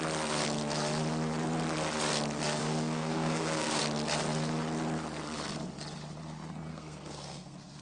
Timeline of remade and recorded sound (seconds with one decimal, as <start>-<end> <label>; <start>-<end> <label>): 0.0-2.6 recorded; 2.6-3.8 remade; 3.8-6.7 recorded; 6.7-7.8 remade